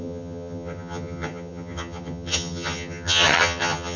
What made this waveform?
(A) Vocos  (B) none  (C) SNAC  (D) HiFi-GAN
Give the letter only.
D